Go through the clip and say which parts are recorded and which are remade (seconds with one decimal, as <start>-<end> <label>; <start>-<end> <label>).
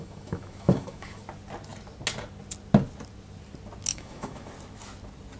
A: 0.0-1.2 remade; 1.2-3.9 recorded; 3.9-4.5 remade; 4.5-5.4 recorded